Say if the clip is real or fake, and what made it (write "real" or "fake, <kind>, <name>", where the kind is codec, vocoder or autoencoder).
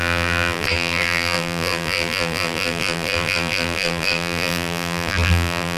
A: fake, vocoder, BigVGAN v2